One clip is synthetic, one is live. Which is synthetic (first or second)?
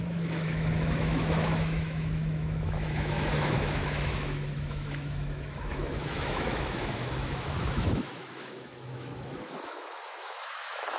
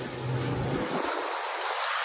first